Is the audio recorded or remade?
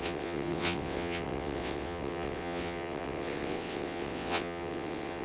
remade